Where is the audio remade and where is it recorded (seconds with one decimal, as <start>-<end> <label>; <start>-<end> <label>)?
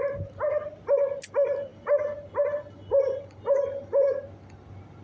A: 0.0-5.0 recorded